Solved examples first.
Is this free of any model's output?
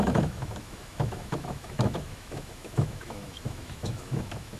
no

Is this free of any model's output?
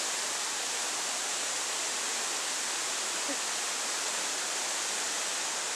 no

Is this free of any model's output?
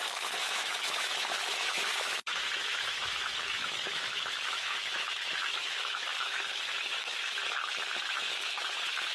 no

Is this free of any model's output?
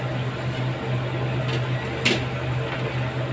yes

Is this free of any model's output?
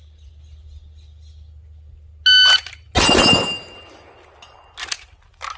yes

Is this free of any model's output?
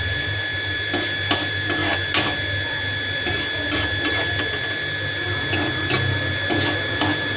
yes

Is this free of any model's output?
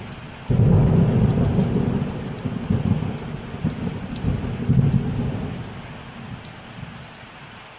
yes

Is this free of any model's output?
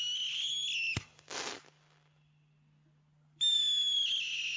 yes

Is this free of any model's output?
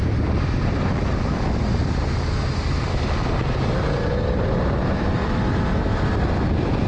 no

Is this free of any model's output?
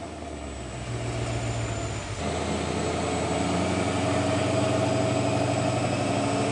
yes